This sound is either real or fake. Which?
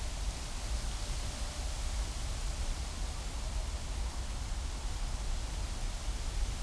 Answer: real